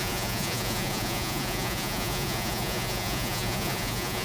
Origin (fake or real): fake